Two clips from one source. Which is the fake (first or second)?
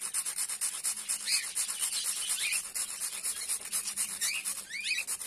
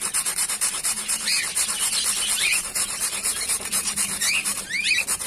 second